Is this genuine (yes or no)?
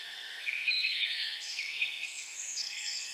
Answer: no